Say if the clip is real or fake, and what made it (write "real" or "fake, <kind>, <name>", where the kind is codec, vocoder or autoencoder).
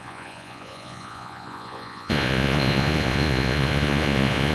fake, vocoder, Vocos